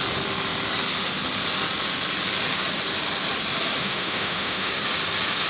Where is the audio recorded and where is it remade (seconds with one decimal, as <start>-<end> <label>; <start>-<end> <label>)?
0.0-3.8 recorded; 3.8-4.7 remade; 4.7-5.5 recorded